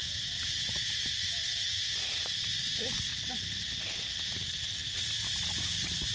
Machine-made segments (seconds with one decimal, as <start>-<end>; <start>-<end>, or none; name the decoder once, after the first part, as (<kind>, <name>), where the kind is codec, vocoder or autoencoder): 0.0-1.0 (vocoder, Vocos)